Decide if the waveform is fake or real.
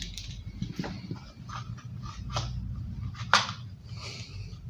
real